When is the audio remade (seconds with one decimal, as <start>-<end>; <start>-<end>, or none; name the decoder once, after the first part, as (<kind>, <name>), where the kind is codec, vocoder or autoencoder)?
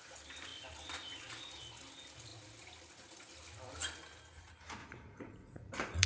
4.8-6.1 (vocoder, Vocos)